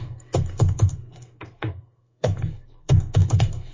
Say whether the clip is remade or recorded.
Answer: remade